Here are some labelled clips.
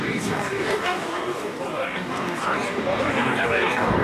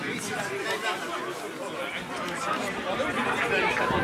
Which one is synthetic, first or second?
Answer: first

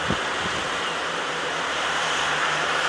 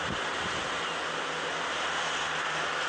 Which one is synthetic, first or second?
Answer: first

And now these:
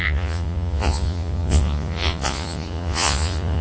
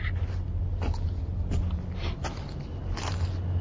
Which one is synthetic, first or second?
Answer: first